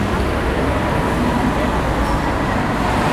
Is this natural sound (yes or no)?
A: no